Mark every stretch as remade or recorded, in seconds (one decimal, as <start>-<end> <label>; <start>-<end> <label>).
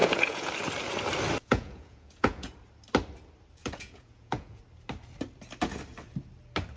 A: 0.0-0.5 remade; 0.5-1.4 recorded; 1.4-2.5 remade; 2.5-3.6 recorded; 3.6-4.6 remade; 4.6-6.8 recorded